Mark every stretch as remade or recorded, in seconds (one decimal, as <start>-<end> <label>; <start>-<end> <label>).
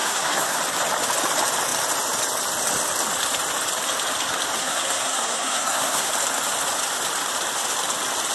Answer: 0.0-0.6 remade; 0.6-4.6 recorded; 4.6-6.1 remade; 6.1-8.3 recorded